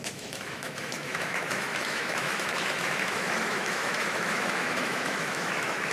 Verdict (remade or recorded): remade